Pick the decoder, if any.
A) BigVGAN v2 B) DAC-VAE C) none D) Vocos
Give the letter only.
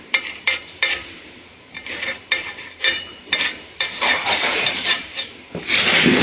A